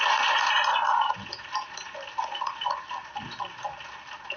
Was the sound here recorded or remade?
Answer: recorded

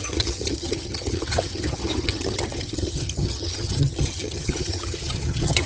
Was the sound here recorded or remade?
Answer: remade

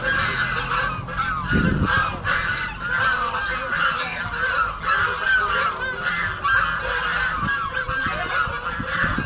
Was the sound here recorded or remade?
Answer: recorded